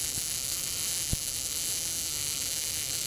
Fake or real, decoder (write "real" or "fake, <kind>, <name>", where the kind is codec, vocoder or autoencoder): real